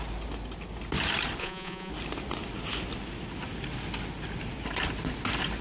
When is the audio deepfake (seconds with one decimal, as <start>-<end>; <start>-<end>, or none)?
1.4-1.9